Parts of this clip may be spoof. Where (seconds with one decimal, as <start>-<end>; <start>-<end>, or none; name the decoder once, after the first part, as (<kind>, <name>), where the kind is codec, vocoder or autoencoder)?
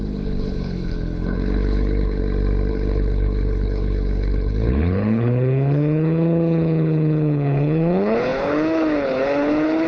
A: 0.0-2.2 (codec, HILCodec); 2.7-9.9